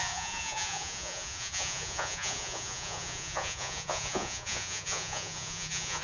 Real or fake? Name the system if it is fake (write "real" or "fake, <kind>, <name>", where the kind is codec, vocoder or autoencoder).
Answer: fake, vocoder, Vocos